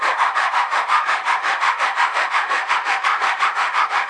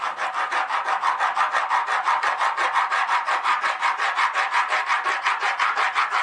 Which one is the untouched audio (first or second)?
second